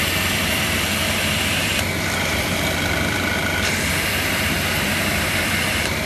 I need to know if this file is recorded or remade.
remade